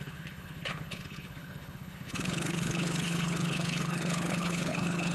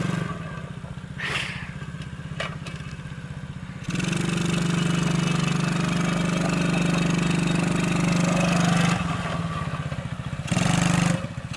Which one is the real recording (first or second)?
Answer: second